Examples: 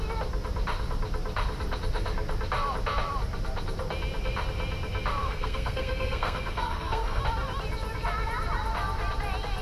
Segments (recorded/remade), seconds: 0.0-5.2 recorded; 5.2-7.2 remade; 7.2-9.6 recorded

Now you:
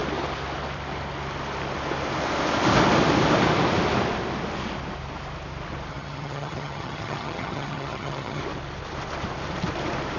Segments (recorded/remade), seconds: 0.0-5.9 recorded; 5.9-8.4 remade; 8.4-10.2 recorded

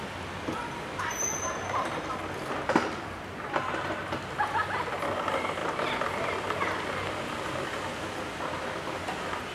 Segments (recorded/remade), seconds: 0.0-9.5 recorded

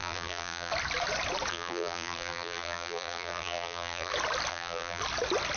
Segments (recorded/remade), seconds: 0.0-0.7 remade; 0.7-1.5 recorded; 1.5-4.1 remade; 4.1-4.5 recorded; 4.5-5.0 remade; 5.0-5.6 recorded